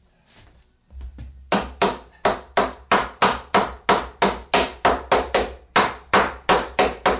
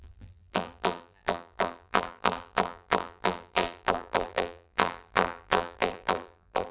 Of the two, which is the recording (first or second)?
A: first